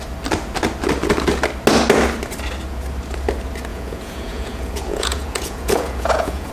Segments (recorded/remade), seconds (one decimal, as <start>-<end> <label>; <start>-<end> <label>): 0.0-3.7 recorded; 3.7-6.5 remade